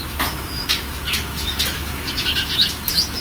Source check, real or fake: fake